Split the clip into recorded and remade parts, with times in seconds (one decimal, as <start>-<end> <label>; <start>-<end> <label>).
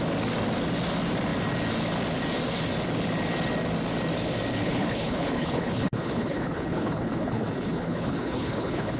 0.0-4.6 recorded; 4.6-9.0 remade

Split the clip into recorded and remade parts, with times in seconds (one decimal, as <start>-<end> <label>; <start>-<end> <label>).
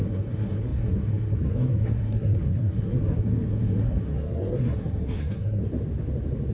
0.0-5.6 remade; 5.6-6.5 recorded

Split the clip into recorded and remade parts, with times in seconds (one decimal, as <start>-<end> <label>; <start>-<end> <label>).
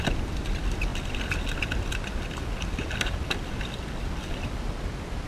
0.0-5.3 recorded